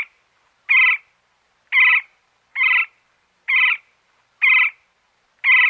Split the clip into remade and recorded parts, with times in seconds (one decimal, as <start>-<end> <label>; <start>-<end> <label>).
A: 0.0-1.9 recorded; 1.9-5.3 remade; 5.3-5.7 recorded